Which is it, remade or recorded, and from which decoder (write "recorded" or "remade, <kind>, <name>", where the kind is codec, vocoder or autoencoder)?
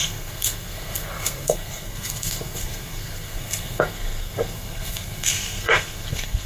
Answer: remade, codec, SNAC